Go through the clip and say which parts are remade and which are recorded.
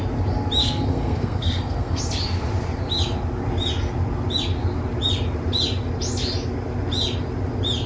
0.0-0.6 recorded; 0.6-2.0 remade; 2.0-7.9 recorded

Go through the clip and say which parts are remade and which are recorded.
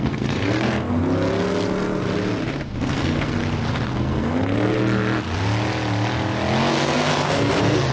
0.0-1.0 remade; 1.0-2.7 recorded; 2.7-3.4 remade; 3.4-4.0 recorded; 4.0-4.8 remade; 4.8-6.7 recorded; 6.7-7.9 remade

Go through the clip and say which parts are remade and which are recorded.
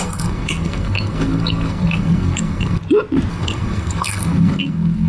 0.0-2.8 remade; 2.8-3.3 recorded; 3.3-5.1 remade